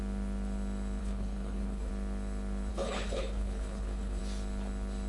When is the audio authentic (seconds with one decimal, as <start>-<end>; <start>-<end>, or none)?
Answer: 0.0-1.0; 1.9-2.7; 4.2-5.1